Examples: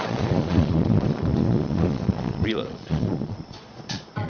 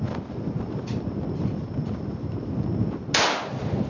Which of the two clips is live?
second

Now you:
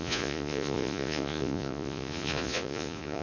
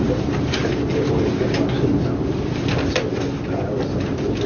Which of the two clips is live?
second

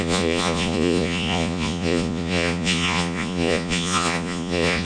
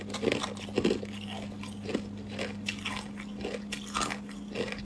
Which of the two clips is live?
second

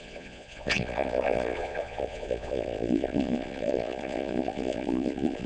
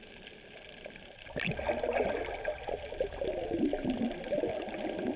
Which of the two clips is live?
second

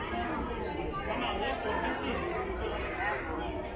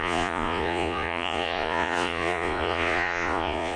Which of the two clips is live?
first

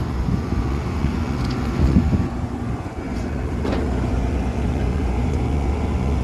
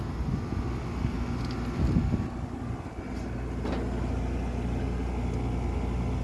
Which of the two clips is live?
second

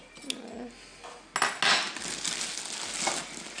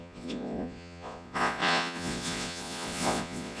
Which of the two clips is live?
first